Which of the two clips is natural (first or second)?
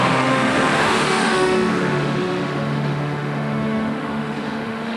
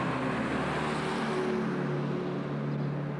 second